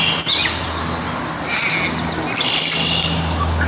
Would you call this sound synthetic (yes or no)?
no